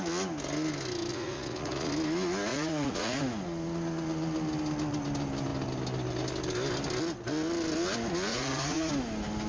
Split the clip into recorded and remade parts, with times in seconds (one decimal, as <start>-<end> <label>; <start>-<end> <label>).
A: 0.0-1.1 recorded; 1.1-1.9 remade; 1.9-2.5 recorded; 2.5-3.2 remade; 3.2-8.3 recorded; 8.3-8.9 remade; 8.9-9.5 recorded